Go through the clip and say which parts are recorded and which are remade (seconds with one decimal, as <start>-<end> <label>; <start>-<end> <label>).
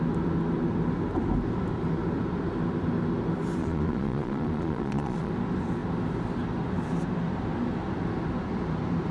0.0-3.6 recorded; 3.6-5.3 remade; 5.3-9.1 recorded